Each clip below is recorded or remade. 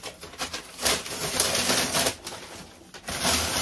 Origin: recorded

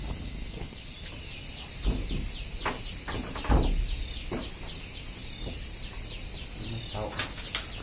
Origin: recorded